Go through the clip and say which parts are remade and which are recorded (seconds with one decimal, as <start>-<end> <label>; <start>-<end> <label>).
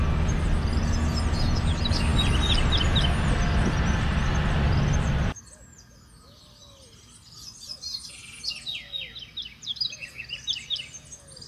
0.0-11.5 recorded